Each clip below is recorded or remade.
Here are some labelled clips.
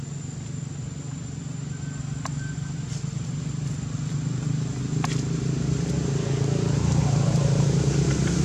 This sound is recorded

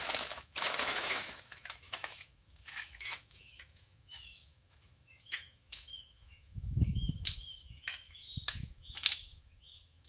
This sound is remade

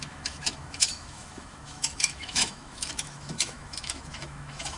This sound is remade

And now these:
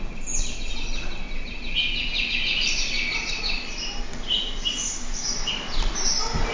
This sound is recorded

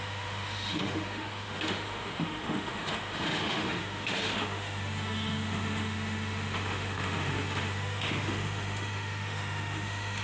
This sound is remade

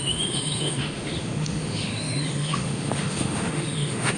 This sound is remade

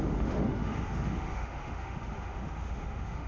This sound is remade